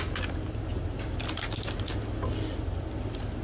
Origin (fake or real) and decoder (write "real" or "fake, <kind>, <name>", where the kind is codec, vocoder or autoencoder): real